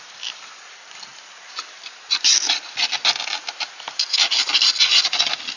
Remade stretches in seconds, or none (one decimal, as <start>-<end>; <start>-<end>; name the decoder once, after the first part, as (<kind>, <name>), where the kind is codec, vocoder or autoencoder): none